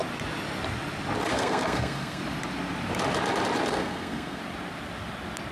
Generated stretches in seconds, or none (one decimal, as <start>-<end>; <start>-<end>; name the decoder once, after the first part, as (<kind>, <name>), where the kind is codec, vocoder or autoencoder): 1.3-2.2 (codec, SNAC); 3.7-4.4